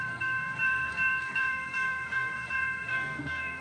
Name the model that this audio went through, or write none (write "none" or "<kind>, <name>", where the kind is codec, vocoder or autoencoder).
codec, SNAC